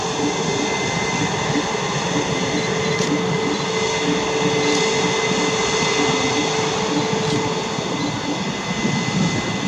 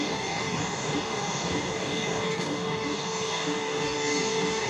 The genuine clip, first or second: first